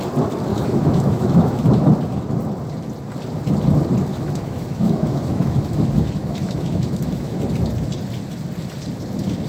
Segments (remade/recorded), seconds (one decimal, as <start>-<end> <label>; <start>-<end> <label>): 0.0-0.5 recorded; 0.5-1.9 remade; 1.9-4.1 recorded; 4.1-7.4 remade; 7.4-9.5 recorded